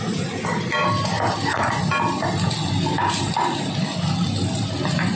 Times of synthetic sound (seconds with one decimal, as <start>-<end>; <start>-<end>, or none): none